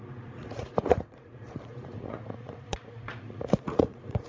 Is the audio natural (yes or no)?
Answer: no